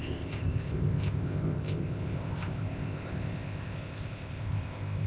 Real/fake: fake